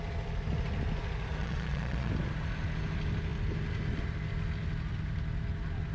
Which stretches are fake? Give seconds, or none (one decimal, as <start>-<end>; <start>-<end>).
1.4-2.1